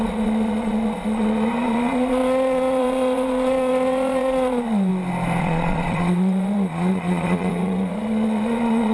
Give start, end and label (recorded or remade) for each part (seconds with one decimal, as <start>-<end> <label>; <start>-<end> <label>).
0.0-4.9 remade; 4.9-5.4 recorded; 5.4-8.9 remade